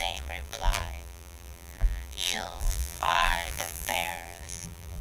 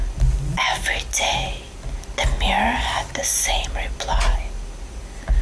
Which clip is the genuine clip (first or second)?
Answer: second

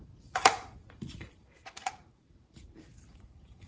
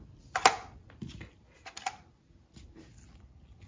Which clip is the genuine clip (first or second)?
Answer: second